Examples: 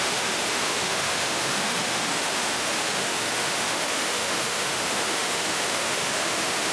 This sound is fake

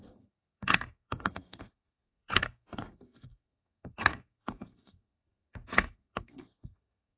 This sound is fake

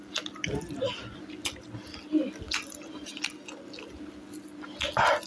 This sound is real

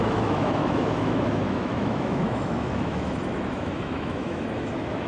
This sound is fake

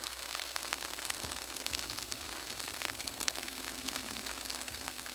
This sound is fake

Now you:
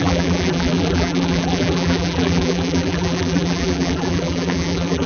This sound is fake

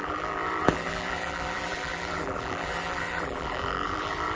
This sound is fake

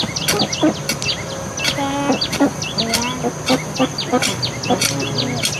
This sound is real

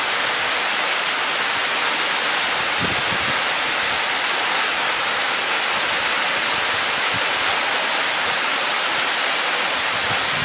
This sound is real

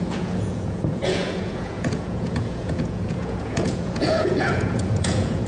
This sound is fake